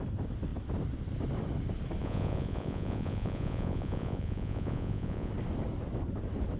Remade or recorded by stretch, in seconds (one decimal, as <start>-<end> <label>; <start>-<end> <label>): 0.0-2.0 recorded; 2.0-5.3 remade; 5.3-6.6 recorded

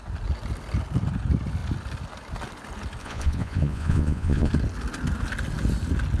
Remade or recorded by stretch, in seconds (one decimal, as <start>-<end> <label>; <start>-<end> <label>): 0.0-3.0 recorded; 3.0-4.5 remade; 4.5-6.2 recorded

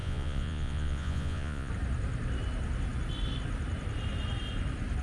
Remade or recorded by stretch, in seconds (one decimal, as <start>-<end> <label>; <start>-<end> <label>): 0.0-1.7 remade; 1.7-5.0 recorded

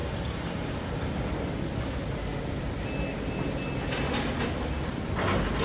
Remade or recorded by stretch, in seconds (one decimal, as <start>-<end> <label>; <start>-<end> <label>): 0.0-5.6 recorded

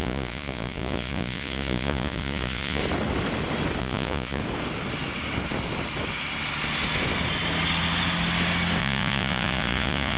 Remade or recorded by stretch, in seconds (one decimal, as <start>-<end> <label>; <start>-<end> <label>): 0.0-2.8 remade; 2.8-3.8 recorded; 3.8-4.4 remade; 4.4-8.8 recorded; 8.8-10.2 remade

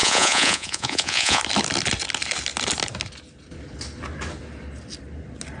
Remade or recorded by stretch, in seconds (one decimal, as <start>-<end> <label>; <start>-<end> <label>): 0.0-1.4 remade; 1.4-5.6 recorded